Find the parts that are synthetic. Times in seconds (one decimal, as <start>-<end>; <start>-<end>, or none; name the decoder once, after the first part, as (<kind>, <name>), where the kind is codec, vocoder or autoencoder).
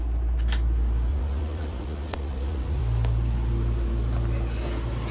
1.1-2.8 (vocoder, Vocos)